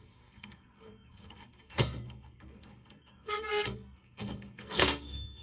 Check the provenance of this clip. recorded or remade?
remade